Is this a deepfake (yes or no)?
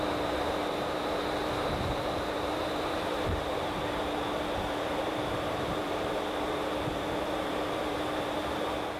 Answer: yes